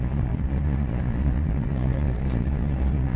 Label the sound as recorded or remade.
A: remade